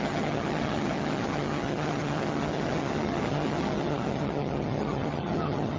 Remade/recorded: remade